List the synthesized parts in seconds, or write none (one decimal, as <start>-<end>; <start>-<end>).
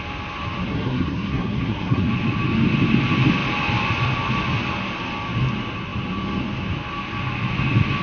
0.7-2.1